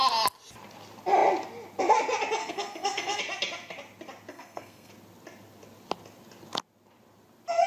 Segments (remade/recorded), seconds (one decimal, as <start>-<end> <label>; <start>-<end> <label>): 0.0-2.4 recorded; 2.4-3.2 remade; 3.2-4.3 recorded; 4.3-4.9 remade; 4.9-7.7 recorded